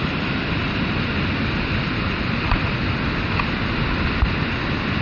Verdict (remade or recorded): recorded